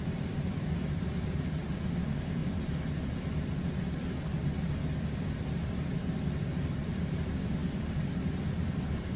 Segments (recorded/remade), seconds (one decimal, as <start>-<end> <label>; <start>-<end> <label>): 0.0-2.4 remade; 2.4-5.6 recorded; 5.6-9.2 remade